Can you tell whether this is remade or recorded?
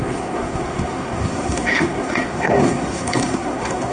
remade